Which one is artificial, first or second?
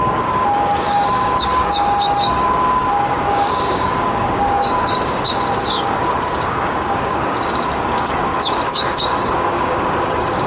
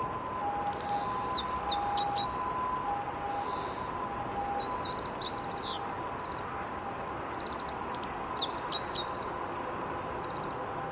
first